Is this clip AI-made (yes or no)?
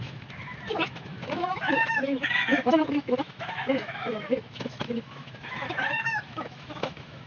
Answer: yes